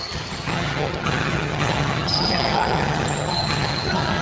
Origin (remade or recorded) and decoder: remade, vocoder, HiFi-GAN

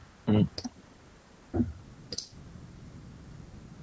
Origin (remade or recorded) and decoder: recorded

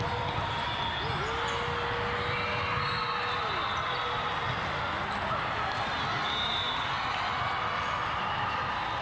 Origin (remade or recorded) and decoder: recorded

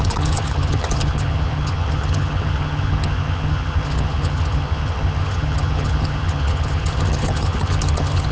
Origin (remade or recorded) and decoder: remade, vocoder, HiFi-GAN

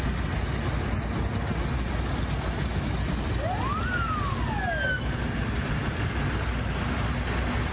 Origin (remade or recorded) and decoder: recorded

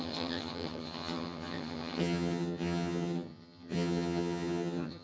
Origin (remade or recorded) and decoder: remade, vocoder, HiFi-GAN